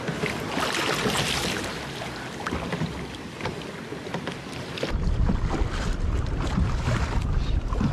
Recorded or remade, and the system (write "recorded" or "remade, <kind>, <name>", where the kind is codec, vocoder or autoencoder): recorded